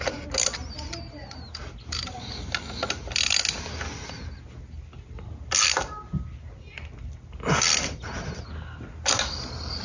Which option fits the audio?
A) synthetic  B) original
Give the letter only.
B